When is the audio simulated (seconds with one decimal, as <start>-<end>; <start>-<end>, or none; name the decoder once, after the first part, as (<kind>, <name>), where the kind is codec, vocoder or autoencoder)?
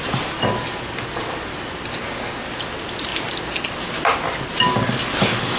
none